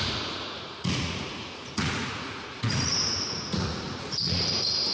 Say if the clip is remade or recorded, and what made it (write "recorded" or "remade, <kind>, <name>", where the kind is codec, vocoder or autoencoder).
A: remade, vocoder, Vocos